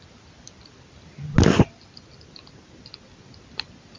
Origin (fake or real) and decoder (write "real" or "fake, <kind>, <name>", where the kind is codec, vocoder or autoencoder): real